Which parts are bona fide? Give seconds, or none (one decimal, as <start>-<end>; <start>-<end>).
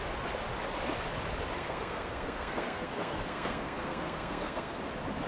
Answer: 0.0-1.6; 4.8-5.3